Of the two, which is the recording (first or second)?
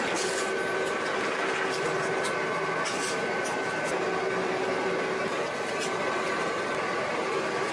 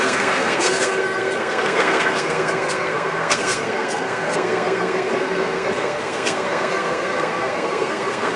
first